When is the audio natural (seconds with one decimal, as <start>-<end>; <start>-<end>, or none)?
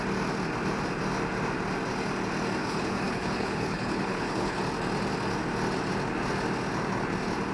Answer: 0.0-2.6; 4.6-7.5